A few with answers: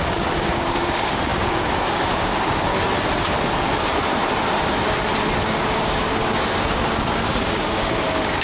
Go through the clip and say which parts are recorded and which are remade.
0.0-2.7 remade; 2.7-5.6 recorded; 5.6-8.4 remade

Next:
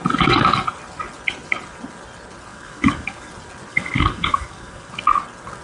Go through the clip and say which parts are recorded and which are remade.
0.0-2.5 recorded; 2.5-3.3 remade; 3.3-3.7 recorded; 3.7-4.9 remade; 4.9-5.6 recorded

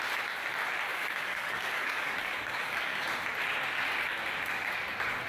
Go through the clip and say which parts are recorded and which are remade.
0.0-0.9 recorded; 0.9-3.1 remade; 3.1-5.3 recorded

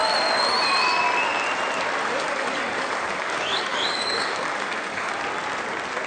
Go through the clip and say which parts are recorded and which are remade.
0.0-2.0 recorded; 2.0-5.2 remade; 5.2-6.1 recorded

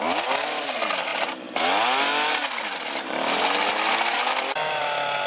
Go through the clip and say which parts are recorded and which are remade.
0.0-5.3 recorded

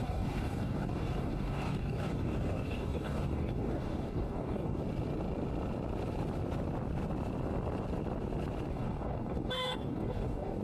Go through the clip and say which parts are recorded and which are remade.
0.0-4.8 remade; 4.8-8.7 recorded; 8.7-10.6 remade

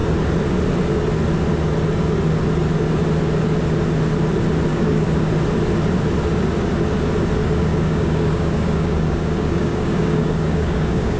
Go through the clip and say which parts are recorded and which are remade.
0.0-4.7 recorded; 4.7-5.3 remade; 5.3-7.4 recorded; 7.4-11.2 remade

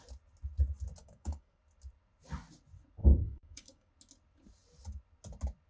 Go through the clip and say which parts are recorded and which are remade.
0.0-1.0 recorded; 1.0-1.6 remade; 1.6-3.0 recorded; 3.0-3.9 remade; 3.9-5.7 recorded